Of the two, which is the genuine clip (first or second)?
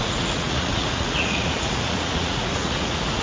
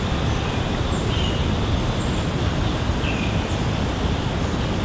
second